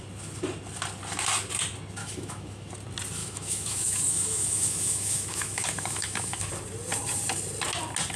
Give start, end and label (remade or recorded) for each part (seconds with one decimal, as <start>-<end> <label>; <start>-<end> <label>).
0.0-2.0 recorded; 2.0-2.7 remade; 2.7-3.2 recorded; 3.2-6.5 remade; 6.5-8.2 recorded